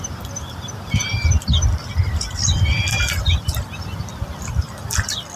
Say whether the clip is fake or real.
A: real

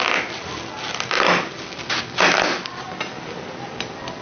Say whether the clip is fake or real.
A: real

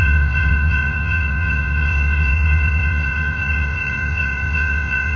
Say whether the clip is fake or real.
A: fake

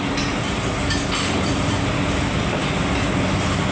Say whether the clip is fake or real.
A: real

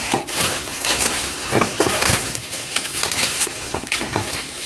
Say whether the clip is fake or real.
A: fake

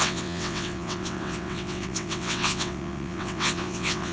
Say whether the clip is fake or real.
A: fake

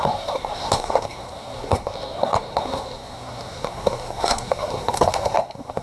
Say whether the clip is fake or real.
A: fake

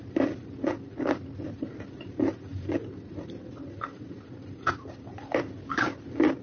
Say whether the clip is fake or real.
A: real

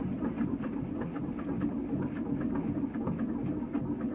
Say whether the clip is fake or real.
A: real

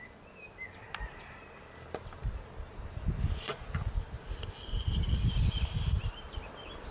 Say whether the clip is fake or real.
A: real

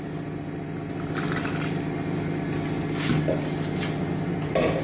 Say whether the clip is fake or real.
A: real